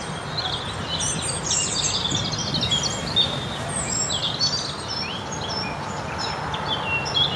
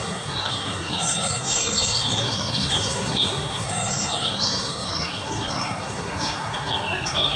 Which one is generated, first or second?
second